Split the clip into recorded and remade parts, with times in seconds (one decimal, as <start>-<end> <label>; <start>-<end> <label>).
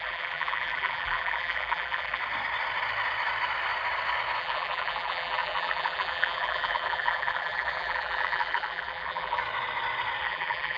0.0-2.2 remade; 2.2-4.4 recorded; 4.4-9.4 remade; 9.4-10.2 recorded; 10.2-10.8 remade